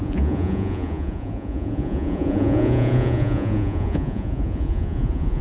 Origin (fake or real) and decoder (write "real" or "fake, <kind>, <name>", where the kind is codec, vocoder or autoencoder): fake, vocoder, Vocos